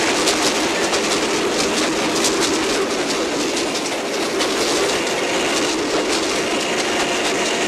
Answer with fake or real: real